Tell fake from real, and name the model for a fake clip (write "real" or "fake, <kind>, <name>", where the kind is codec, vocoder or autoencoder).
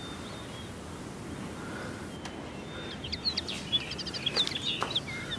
real